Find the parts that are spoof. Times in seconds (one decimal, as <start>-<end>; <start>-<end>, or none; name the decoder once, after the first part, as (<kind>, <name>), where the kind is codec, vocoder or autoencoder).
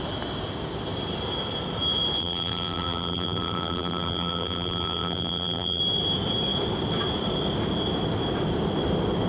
2.2-5.8 (vocoder, BigVGAN v2)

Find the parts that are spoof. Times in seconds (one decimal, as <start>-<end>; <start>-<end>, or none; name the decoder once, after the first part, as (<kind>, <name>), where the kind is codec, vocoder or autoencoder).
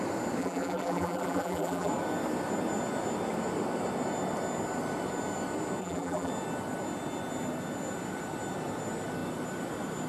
0.4-1.9 (vocoder, BigVGAN v2); 5.8-6.3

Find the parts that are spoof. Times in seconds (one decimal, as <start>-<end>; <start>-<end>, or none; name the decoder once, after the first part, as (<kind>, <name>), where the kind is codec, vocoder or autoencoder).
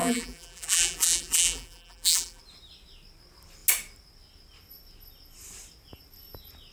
0.0-2.4 (vocoder, BigVGAN v2)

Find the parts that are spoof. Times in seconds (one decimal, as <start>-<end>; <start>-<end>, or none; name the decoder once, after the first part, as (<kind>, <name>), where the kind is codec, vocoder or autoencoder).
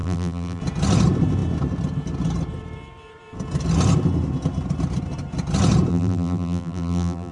0.0-0.6 (vocoder, BigVGAN v2); 5.9-7.3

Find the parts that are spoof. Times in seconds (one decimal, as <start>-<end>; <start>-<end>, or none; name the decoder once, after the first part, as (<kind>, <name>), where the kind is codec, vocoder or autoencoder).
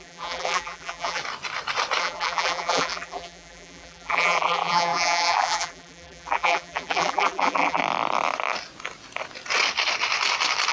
0.0-1.2 (vocoder, BigVGAN v2); 2.0-7.8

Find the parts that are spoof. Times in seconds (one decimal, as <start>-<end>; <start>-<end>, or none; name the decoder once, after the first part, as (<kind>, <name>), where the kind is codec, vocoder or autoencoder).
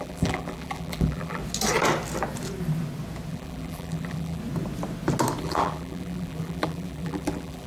0.0-1.4 (vocoder, BigVGAN v2); 3.3-4.4; 5.4-7.7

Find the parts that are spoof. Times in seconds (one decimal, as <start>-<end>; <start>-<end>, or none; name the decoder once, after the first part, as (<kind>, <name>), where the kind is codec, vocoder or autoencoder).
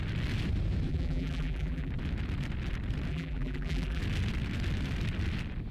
0.9-1.9 (vocoder, BigVGAN v2); 3.1-4.0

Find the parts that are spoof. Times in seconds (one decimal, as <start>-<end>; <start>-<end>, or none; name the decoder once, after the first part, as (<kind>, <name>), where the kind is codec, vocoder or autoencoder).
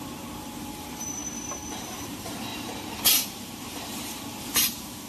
0.0-1.2 (vocoder, BigVGAN v2); 1.7-5.1